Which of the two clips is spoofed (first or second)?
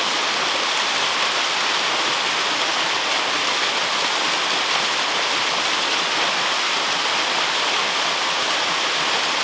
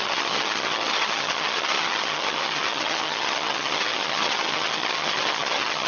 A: second